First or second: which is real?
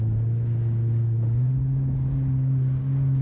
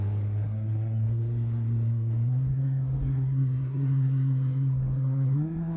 first